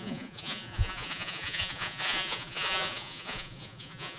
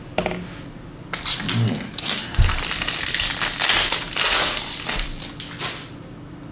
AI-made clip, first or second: first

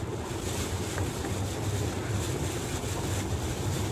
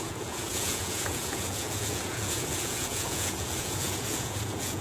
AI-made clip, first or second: second